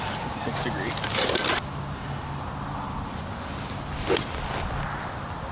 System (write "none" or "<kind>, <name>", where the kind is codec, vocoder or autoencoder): none